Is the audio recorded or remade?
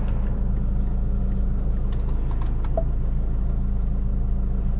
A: recorded